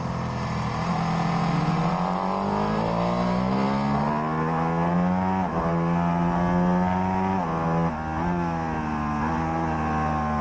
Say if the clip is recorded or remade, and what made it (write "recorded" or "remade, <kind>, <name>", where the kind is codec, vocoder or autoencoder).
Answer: recorded